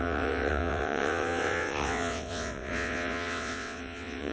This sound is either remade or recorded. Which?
remade